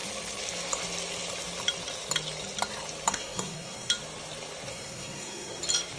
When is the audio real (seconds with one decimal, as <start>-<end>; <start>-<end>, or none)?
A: 0.0-3.1; 3.9-4.7; 5.6-6.0